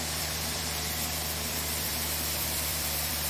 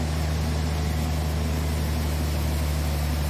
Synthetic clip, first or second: first